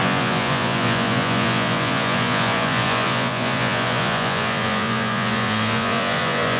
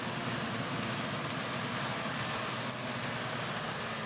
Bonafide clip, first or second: second